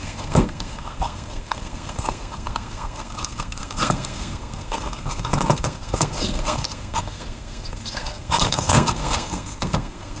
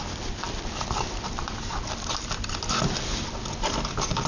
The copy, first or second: first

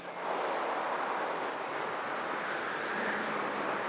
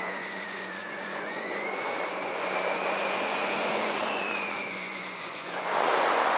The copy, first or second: second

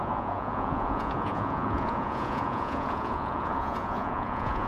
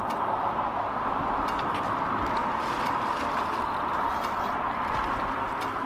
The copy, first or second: first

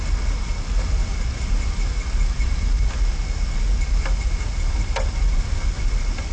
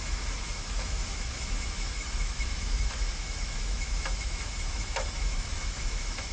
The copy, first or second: second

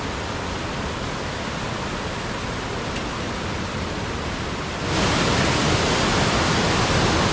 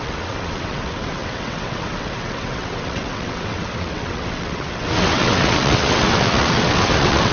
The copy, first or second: second